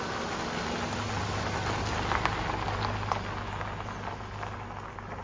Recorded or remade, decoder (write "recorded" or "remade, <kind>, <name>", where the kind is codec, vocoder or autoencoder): recorded